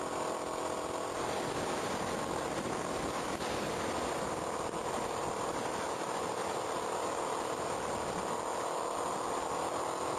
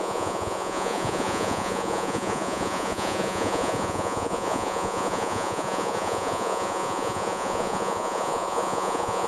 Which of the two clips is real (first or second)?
first